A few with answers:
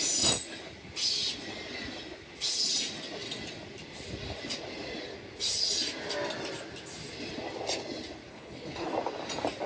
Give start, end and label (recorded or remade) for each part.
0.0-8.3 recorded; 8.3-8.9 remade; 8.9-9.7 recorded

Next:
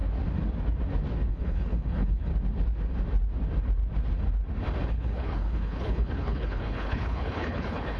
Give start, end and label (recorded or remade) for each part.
0.0-1.3 recorded; 1.3-2.3 remade; 2.3-4.9 recorded; 4.9-8.0 remade

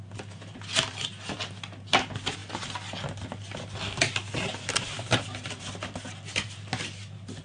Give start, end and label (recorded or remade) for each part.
0.0-7.4 recorded

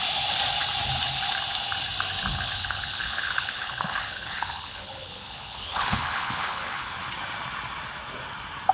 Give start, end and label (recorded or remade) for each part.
0.0-2.3 recorded; 2.3-7.0 remade; 7.0-8.7 recorded